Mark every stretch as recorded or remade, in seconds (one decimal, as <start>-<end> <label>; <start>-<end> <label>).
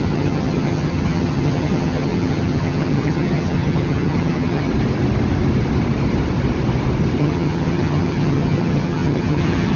0.0-4.7 remade; 4.7-7.2 recorded; 7.2-9.8 remade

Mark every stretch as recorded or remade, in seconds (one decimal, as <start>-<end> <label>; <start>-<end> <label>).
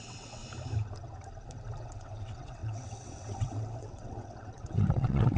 0.0-0.4 remade; 0.4-1.8 recorded; 1.8-5.4 remade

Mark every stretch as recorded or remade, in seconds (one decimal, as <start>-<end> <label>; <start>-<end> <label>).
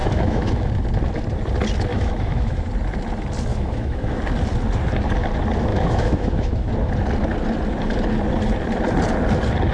0.0-0.7 remade; 0.7-1.9 recorded; 1.9-2.7 remade; 2.7-3.5 recorded; 3.5-4.2 remade; 4.2-5.7 recorded; 5.7-6.7 remade; 6.7-9.7 recorded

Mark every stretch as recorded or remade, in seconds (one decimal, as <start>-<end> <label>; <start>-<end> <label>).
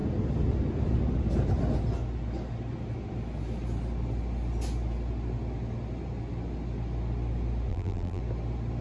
0.0-7.7 recorded; 7.7-8.2 remade; 8.2-8.8 recorded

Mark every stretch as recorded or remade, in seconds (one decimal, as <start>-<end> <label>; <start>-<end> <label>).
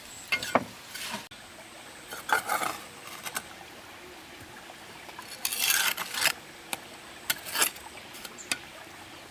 0.0-9.3 recorded